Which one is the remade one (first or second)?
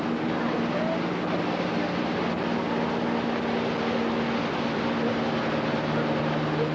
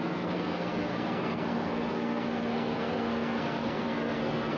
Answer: second